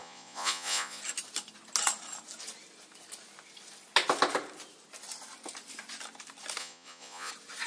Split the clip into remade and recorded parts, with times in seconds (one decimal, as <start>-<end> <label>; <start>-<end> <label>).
0.0-1.0 remade; 1.0-6.6 recorded; 6.6-7.3 remade; 7.3-7.7 recorded